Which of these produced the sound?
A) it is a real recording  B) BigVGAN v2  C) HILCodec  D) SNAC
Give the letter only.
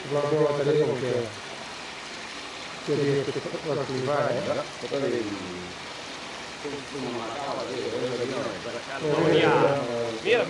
A